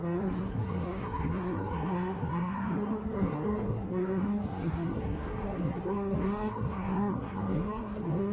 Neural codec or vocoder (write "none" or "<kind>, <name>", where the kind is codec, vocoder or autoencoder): codec, SNAC